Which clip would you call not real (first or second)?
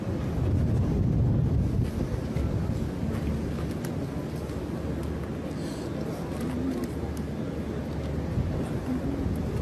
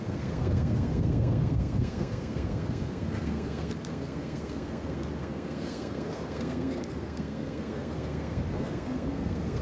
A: second